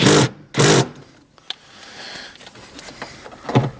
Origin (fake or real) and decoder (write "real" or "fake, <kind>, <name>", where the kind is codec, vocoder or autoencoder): real